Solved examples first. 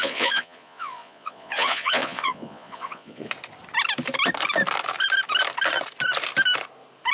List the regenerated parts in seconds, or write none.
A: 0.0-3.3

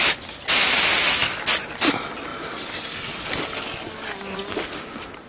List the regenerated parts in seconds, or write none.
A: none

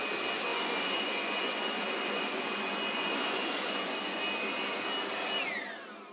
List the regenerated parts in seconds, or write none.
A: 0.5-4.2

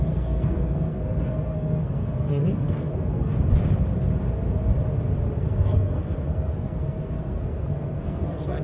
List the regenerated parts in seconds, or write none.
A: 0.0-3.3; 5.4-8.6

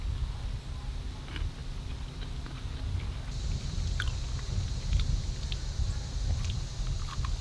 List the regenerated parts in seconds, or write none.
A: none

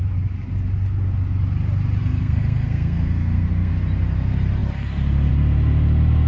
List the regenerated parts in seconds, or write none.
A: 2.0-3.7